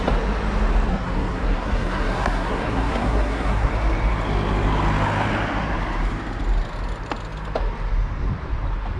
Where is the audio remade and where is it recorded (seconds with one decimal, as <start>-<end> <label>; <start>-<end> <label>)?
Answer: 0.0-0.9 recorded; 0.9-3.7 remade; 3.7-9.0 recorded